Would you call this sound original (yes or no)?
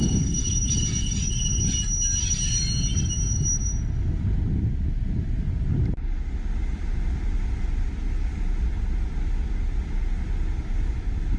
yes